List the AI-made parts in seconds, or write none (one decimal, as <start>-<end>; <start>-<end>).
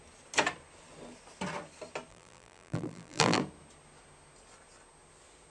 2.1-3.4